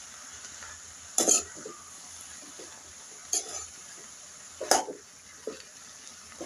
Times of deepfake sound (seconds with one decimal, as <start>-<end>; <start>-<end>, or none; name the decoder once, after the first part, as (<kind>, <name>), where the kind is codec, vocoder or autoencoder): 0.0-2.4 (vocoder, BigVGAN v2)